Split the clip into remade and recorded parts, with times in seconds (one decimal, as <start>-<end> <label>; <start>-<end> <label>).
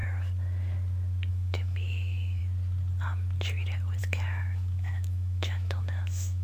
0.0-1.3 recorded; 1.3-2.4 remade; 2.4-4.0 recorded; 4.0-6.4 remade